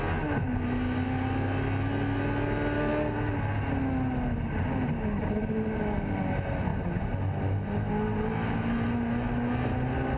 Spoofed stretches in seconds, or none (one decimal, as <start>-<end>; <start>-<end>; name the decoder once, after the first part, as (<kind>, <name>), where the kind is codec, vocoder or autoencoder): none